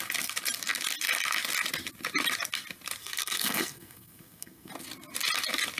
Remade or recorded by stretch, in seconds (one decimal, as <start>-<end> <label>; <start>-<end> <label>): 0.0-3.0 recorded; 3.0-4.7 remade; 4.7-5.8 recorded